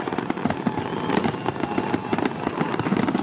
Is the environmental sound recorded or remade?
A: remade